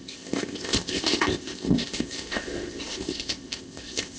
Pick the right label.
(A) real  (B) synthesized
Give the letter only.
B